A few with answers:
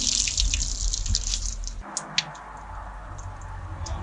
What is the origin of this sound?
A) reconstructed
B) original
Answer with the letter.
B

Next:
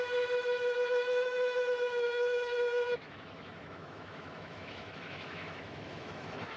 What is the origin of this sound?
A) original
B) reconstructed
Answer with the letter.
B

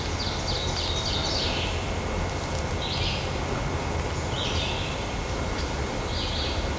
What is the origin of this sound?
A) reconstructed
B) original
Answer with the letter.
B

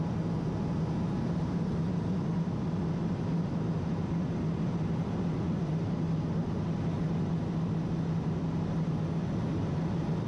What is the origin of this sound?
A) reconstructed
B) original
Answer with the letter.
B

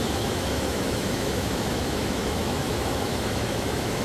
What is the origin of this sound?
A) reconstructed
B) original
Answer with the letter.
A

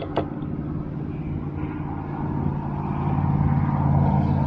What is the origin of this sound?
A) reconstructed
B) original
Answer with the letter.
B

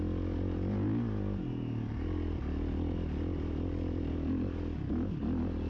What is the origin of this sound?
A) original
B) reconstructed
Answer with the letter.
A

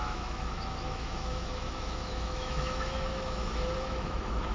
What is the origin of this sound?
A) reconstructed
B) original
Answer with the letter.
A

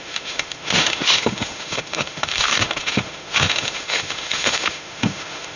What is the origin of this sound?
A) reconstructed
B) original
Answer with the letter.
A